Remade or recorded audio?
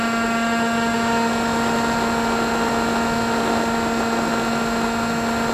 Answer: recorded